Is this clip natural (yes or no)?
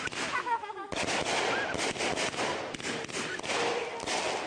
yes